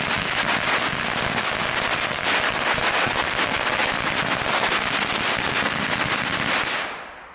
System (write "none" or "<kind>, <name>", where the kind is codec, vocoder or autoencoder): none